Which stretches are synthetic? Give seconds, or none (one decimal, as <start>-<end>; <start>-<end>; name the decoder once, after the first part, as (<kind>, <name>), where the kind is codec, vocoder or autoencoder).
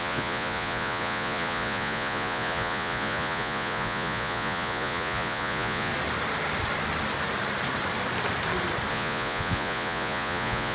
0.0-5.9 (vocoder, Vocos); 8.9-10.7